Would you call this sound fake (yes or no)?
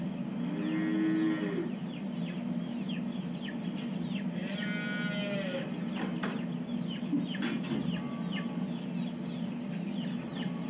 no